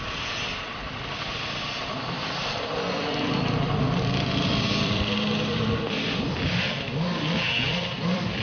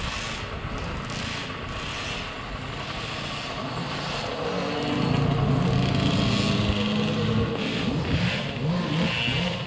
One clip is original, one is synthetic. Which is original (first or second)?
second